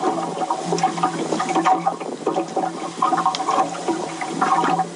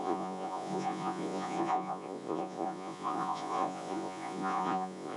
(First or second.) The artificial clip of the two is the second